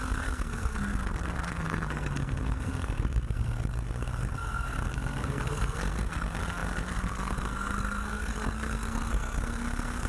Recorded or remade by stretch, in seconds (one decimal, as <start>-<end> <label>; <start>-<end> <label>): 0.0-10.1 remade